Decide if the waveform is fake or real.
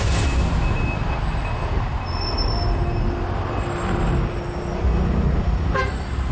real